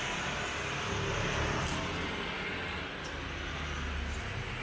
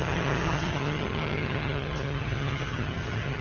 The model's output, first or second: second